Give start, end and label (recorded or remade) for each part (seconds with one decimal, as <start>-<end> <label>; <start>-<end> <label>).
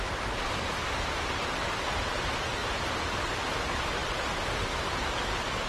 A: 0.0-2.6 remade; 2.6-3.2 recorded; 3.2-4.0 remade; 4.0-5.7 recorded